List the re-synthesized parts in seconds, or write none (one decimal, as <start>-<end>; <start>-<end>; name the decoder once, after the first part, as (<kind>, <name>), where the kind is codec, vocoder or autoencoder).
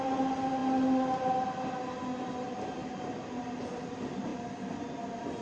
none